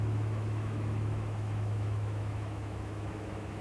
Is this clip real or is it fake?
fake